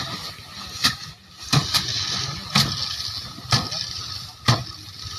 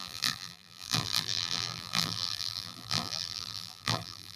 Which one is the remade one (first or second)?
second